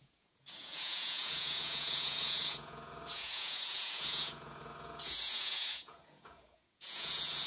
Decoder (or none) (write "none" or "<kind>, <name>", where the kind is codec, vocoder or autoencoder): vocoder, Vocos